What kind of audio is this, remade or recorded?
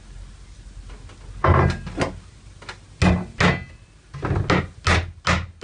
recorded